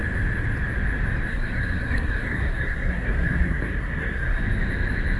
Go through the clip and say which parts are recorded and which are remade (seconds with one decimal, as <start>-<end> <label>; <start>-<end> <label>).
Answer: 0.0-1.3 recorded; 1.3-4.4 remade; 4.4-5.2 recorded